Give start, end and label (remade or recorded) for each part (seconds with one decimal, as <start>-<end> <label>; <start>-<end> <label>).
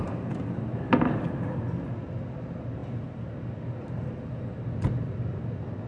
0.0-5.9 recorded